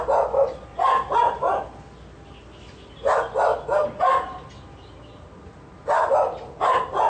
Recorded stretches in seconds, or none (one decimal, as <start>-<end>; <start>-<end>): 0.0-7.1